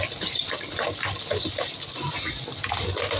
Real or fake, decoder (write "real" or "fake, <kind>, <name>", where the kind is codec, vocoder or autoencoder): real